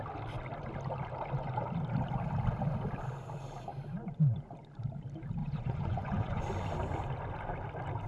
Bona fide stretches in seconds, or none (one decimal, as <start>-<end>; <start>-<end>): 0.0-5.4; 6.4-8.1